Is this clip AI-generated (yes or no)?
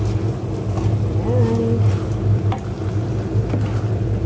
no